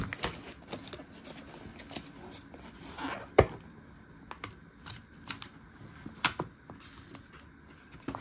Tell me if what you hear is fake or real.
real